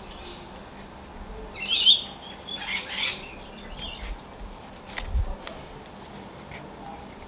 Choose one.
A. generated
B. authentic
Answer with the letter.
B